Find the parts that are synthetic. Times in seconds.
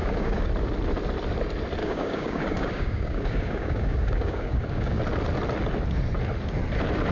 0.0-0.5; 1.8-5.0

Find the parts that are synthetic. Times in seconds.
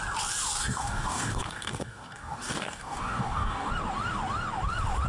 0.6-3.7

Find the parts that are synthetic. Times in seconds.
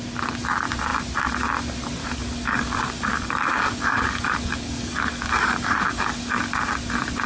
2.0-6.4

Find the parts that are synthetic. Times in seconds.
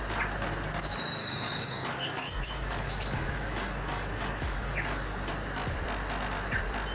1.2-5.3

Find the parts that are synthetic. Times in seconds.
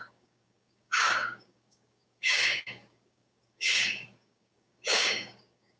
0.0-5.8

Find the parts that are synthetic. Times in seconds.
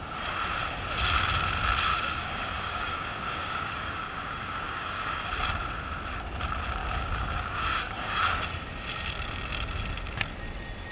1.9-5.2; 6.8-8.2